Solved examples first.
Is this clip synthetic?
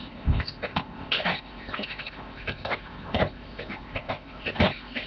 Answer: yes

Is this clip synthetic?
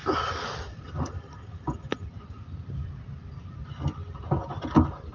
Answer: no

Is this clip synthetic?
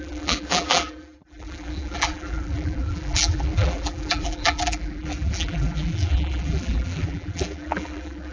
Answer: yes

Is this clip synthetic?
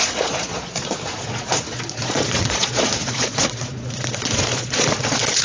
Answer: yes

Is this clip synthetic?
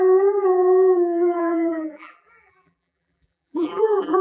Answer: yes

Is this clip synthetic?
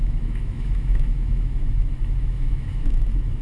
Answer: yes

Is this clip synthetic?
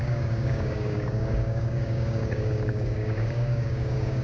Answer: yes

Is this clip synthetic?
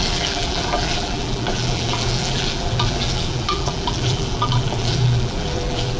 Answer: yes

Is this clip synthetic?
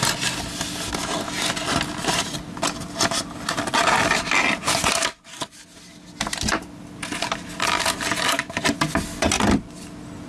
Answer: no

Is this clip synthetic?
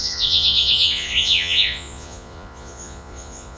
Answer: yes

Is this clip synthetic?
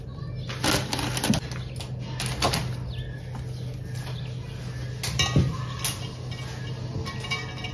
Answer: no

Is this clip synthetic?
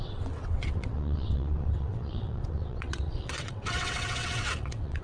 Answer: yes